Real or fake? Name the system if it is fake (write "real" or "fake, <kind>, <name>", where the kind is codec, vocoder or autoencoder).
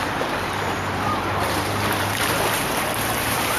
fake, vocoder, BigVGAN v2